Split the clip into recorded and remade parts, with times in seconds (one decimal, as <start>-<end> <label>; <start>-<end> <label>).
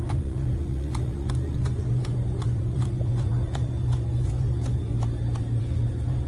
0.0-4.9 remade; 4.9-5.6 recorded; 5.6-6.3 remade